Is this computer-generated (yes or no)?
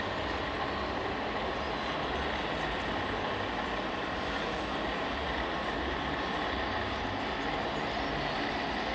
no